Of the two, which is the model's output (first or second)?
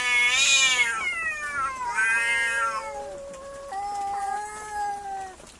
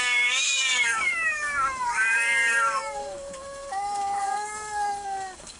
second